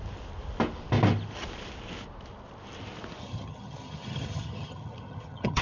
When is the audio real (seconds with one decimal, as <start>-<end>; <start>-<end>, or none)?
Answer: 0.0-3.2